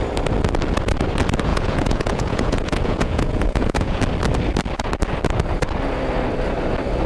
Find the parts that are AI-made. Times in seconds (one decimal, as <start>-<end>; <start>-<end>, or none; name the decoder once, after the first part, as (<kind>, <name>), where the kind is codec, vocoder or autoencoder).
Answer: 1.5-4.0 (vocoder, Vocos)